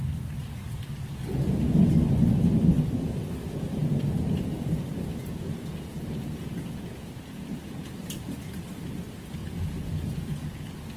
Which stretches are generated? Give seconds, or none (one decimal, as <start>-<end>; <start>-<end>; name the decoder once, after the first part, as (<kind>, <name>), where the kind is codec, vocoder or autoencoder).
1.2-1.9 (vocoder, Vocos); 3.8-8.0; 9.4-10.6